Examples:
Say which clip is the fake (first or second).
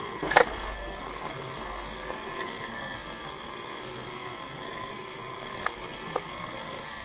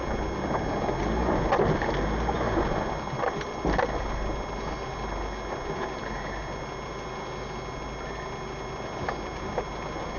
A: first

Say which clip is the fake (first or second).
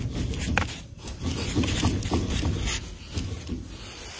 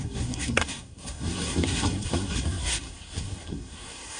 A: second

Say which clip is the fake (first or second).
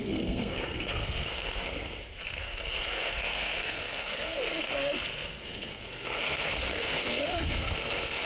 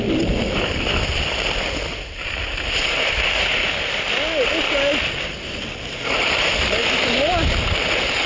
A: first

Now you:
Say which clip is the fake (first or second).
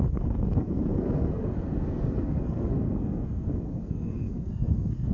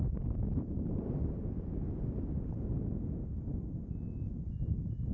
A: first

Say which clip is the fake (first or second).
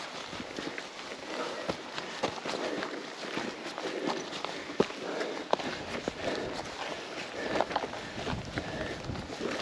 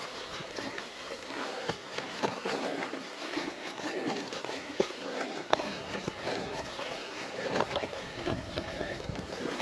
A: second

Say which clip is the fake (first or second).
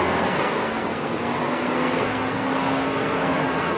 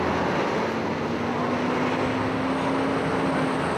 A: first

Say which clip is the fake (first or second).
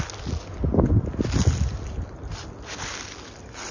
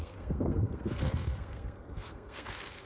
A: second